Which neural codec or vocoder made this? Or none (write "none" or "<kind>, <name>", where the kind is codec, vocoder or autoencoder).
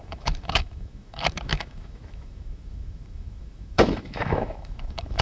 autoencoder, DAC-VAE